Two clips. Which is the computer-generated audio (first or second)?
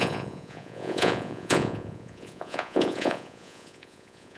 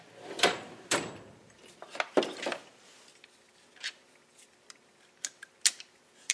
first